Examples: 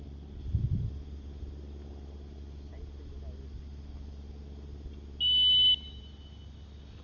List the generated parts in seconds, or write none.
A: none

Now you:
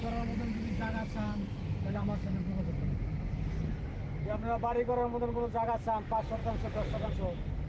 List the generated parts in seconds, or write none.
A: 1.1-2.6 (autoencoder, DAC-VAE); 3.9-4.6; 6.4-7.1

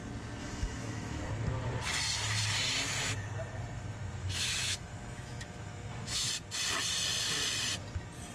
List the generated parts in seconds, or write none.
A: 0.4-1.2 (autoencoder, DAC-VAE); 4.2-6.3

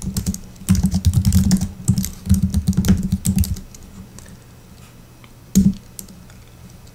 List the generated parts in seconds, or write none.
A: none

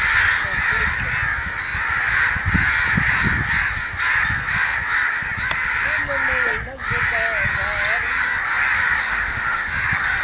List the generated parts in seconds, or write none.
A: 9.1-9.7 (autoencoder, DAC-VAE)